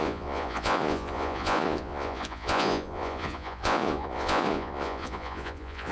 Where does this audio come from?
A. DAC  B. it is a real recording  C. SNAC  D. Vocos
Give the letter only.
D